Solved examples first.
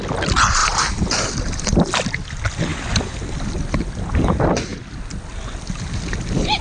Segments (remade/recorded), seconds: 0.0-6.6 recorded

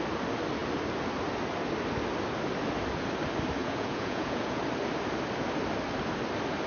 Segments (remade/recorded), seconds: 0.0-3.6 recorded; 3.6-4.6 remade; 4.6-6.7 recorded

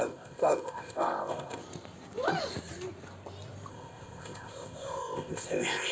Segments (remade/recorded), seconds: 0.0-1.6 remade; 1.6-3.7 recorded; 3.7-5.9 remade

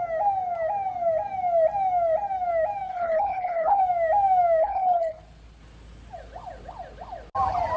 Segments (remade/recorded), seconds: 0.0-2.9 recorded; 2.9-3.8 remade; 3.8-4.6 recorded; 4.6-5.2 remade; 5.2-7.8 recorded

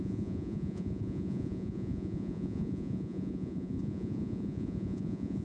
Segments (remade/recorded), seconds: 0.0-5.4 remade

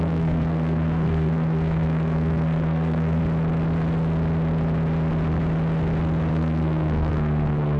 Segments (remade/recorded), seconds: 0.0-3.2 remade; 3.2-6.3 recorded; 6.3-7.8 remade